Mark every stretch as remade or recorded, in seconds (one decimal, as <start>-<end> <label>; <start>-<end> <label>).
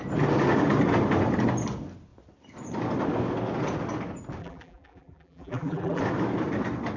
0.0-4.4 recorded; 4.4-6.0 remade; 6.0-7.0 recorded